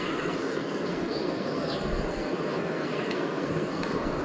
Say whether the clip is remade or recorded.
remade